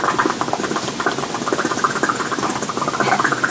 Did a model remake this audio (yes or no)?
no